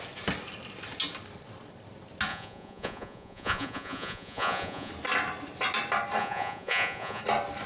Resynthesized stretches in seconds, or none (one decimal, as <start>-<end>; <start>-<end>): 2.3-4.9; 6.2-7.2